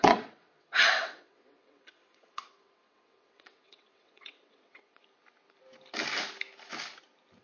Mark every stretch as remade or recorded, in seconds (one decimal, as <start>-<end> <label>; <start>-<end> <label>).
0.0-5.0 remade; 5.0-7.4 recorded